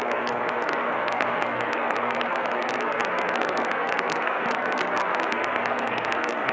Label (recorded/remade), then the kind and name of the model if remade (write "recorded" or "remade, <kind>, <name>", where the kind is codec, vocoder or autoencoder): remade, codec, SNAC